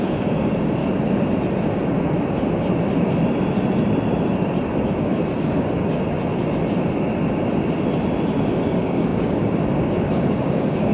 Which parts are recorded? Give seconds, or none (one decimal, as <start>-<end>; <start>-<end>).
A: 0.8-4.8; 5.9-8.4